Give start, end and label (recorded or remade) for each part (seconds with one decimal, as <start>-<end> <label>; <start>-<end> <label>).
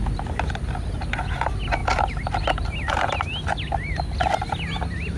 0.0-5.2 recorded